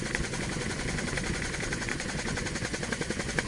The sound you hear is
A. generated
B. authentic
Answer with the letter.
A